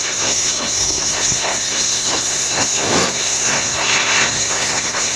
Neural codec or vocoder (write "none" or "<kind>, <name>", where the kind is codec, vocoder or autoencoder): codec, SNAC